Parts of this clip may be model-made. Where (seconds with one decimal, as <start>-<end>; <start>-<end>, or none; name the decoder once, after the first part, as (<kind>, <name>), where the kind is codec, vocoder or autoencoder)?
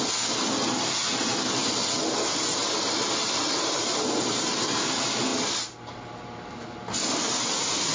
none